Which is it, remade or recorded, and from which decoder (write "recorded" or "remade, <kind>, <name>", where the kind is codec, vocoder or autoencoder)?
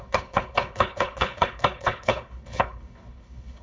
remade, codec, HILCodec